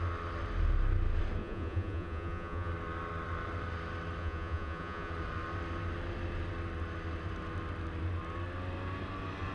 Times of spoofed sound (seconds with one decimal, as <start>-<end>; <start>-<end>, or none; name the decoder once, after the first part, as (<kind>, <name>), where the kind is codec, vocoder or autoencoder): 1.4-2.7 (vocoder, Vocos); 4.2-5.1